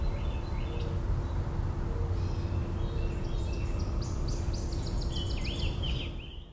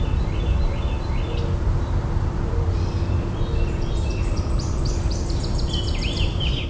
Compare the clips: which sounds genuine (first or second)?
first